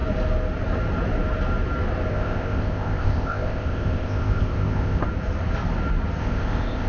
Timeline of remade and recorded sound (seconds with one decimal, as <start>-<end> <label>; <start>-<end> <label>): 0.0-2.1 recorded; 2.1-5.0 remade; 5.0-6.2 recorded; 6.2-6.9 remade